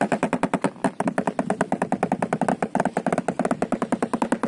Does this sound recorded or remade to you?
recorded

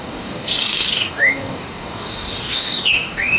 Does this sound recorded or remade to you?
remade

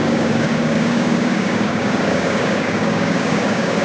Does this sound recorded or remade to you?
remade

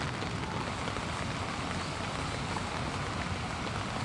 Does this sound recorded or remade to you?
recorded